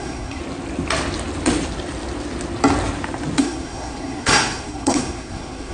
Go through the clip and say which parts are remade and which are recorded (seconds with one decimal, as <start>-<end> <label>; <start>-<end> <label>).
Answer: 0.0-0.4 remade; 0.4-3.4 recorded; 3.4-5.7 remade